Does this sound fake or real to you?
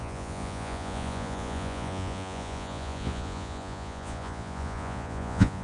fake